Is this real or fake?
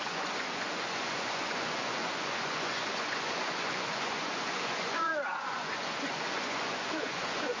fake